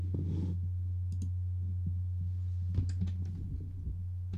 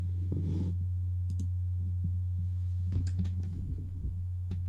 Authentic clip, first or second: first